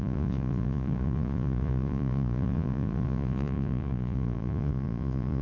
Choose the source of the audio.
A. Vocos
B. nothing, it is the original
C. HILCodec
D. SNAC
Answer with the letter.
A